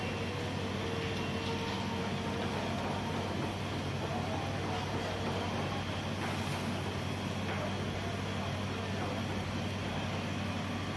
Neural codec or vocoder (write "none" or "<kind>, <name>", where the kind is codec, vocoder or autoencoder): none